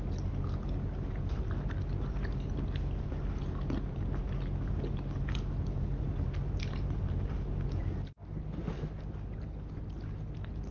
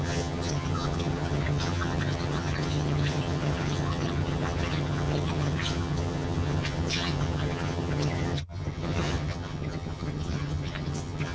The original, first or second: first